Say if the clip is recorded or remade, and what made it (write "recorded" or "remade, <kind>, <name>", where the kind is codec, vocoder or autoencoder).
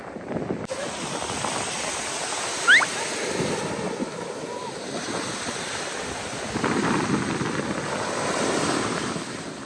recorded